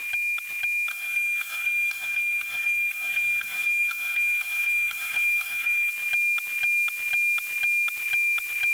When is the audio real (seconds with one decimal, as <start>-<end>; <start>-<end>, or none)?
0.0-0.9; 5.9-8.7